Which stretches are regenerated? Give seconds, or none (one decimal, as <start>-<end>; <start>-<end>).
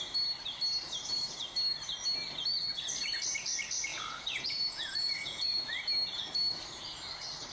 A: 3.9-5.6